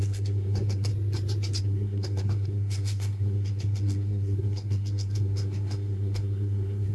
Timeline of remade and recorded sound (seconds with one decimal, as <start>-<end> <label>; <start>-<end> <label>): 0.0-0.9 remade; 0.9-1.6 recorded; 1.6-6.9 remade